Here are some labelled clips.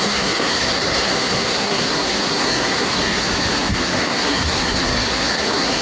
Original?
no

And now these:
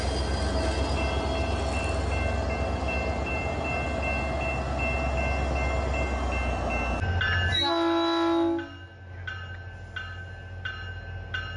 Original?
yes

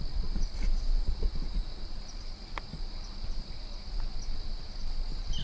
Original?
yes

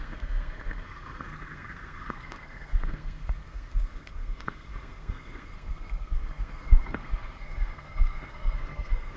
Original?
no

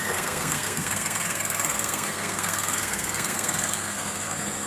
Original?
no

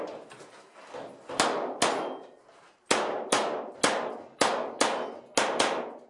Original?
yes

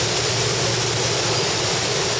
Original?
yes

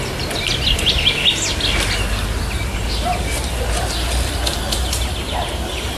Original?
yes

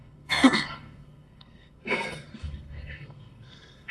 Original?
no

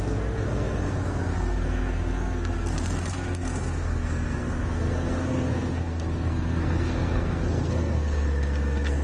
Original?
no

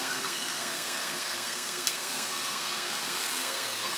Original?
no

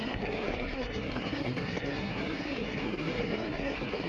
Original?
no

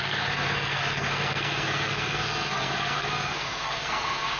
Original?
no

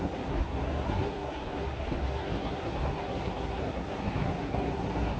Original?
no